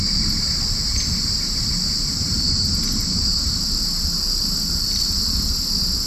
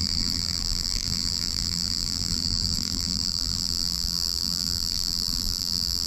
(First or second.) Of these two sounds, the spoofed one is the second